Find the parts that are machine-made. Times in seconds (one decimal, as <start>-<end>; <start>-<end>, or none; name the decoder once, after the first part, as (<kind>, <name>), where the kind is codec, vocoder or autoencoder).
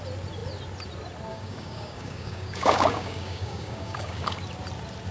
1.3-4.4 (codec, DAC)